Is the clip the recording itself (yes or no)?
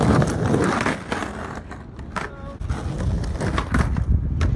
yes